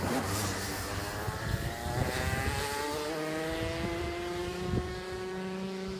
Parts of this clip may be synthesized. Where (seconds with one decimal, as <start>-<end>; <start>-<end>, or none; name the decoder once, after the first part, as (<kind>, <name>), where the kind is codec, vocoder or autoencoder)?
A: 4.4-6.0 (autoencoder, DAC-VAE)